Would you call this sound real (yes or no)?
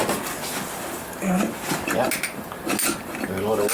yes